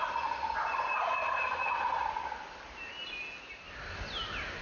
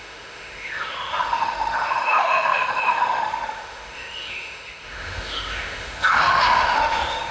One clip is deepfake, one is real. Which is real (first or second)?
first